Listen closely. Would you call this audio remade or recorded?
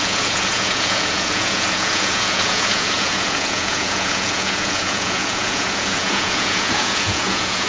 remade